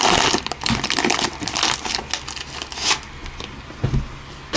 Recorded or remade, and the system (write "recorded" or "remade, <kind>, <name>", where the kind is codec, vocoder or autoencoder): recorded